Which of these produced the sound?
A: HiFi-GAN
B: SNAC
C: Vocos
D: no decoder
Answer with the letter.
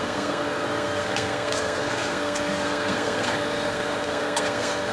B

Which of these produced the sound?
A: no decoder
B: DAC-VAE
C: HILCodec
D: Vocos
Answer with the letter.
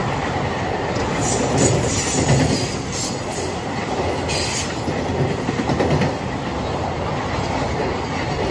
A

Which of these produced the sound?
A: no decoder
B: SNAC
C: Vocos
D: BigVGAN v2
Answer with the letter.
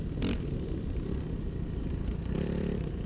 D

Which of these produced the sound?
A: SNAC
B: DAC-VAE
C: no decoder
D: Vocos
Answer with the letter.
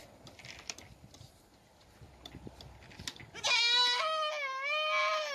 C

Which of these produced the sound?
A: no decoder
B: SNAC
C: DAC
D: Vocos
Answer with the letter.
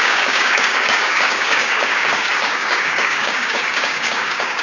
C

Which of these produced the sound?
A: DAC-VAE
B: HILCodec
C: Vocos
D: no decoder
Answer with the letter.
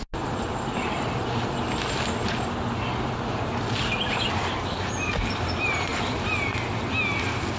D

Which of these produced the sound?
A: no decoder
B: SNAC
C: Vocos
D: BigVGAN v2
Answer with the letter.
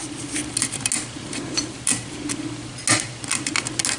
A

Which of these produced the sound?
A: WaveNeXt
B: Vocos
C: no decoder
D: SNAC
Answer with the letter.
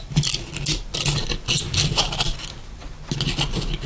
C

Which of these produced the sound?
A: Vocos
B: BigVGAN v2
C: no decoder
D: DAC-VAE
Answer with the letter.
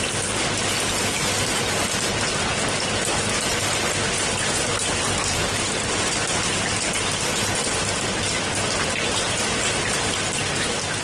C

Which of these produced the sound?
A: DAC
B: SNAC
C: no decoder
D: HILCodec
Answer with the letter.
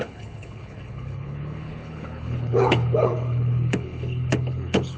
D